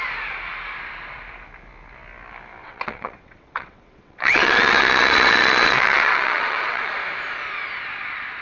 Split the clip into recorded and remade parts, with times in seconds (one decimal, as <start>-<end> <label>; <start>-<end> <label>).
0.0-2.6 recorded; 2.6-6.9 remade; 6.9-8.4 recorded